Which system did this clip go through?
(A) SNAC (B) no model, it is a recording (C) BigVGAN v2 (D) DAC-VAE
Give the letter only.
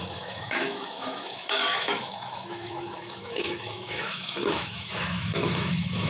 D